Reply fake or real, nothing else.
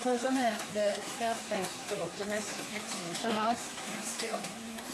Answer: fake